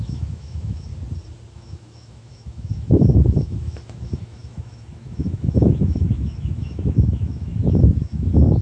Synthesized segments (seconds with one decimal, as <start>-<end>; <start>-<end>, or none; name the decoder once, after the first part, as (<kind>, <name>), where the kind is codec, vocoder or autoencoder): 0.0-0.9 (autoencoder, DAC-VAE); 1.5-8.6